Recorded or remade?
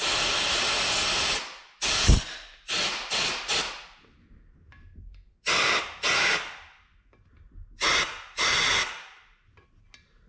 recorded